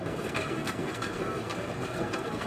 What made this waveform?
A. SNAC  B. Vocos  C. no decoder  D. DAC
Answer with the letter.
A